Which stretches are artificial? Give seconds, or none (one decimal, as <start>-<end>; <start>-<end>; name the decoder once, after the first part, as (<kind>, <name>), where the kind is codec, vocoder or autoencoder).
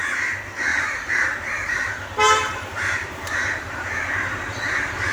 0.7-3.8 (vocoder, BigVGAN v2)